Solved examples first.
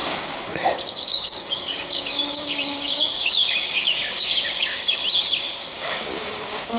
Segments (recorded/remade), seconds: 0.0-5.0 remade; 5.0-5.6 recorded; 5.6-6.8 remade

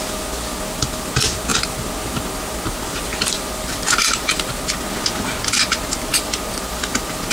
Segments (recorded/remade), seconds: 0.0-7.3 recorded

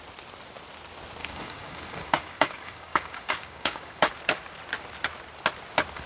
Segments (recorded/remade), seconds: 0.0-1.2 recorded; 1.2-4.1 remade; 4.1-6.1 recorded

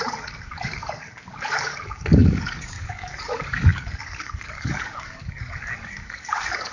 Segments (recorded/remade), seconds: 0.0-6.7 remade

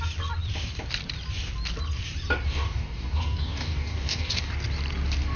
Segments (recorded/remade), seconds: 0.0-2.5 recorded; 2.5-4.5 remade; 4.5-5.4 recorded

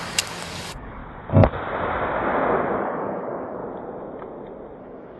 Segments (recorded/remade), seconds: 0.0-1.0 remade; 1.0-2.8 recorded; 2.8-3.6 remade; 3.6-4.8 recorded; 4.8-5.2 remade